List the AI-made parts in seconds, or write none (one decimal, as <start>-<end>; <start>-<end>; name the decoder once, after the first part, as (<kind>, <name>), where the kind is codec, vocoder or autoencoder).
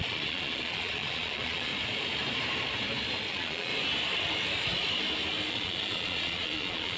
0.0-1.7 (vocoder, Vocos); 3.3-3.7; 5.5-7.0